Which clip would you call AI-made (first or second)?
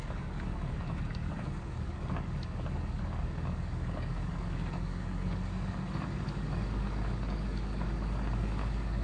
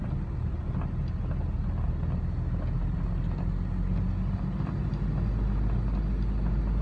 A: first